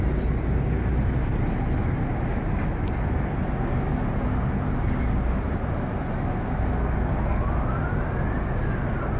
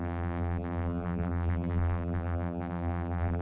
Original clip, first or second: first